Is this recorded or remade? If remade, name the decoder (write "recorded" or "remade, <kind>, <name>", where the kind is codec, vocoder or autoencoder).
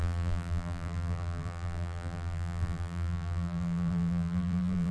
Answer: remade, vocoder, BigVGAN v2